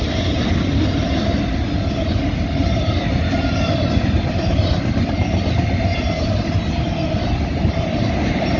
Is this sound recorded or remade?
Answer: recorded